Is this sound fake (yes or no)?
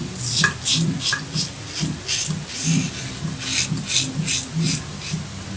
no